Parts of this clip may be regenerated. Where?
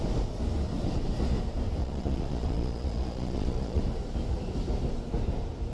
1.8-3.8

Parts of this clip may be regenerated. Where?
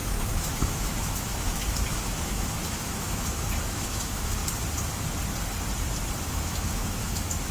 0.0-4.4; 6.3-7.5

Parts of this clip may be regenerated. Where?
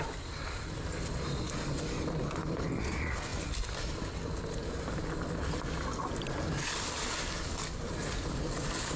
none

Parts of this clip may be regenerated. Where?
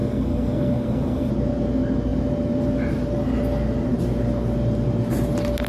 0.0-1.3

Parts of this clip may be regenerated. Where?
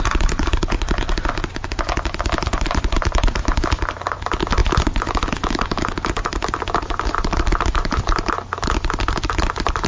none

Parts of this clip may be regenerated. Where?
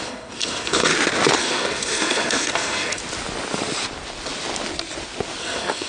0.0-0.9; 1.4-3.0; 5.4-5.9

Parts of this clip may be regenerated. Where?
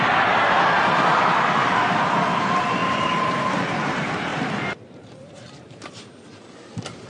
0.0-1.1; 2.4-4.3; 4.9-7.1